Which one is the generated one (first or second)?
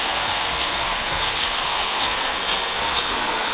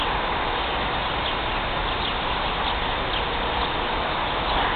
first